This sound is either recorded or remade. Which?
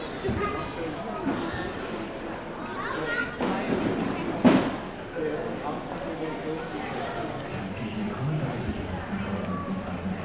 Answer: recorded